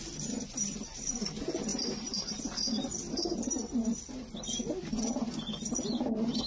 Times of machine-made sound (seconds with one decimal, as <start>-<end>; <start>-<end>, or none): none